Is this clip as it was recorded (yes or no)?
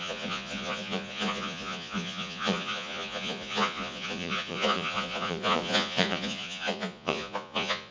no